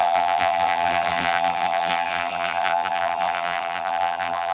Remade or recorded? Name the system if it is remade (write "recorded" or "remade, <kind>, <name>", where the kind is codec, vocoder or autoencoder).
remade, vocoder, BigVGAN v2